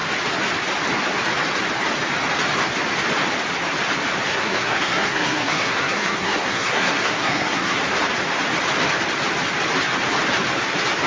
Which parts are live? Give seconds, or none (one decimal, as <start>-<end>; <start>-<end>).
0.0-4.3; 7.8-11.1